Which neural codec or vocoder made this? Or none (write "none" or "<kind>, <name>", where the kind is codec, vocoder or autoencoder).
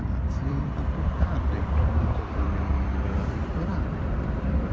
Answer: vocoder, BigVGAN v2